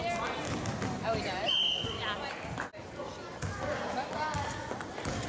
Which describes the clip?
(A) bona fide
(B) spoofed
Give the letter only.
A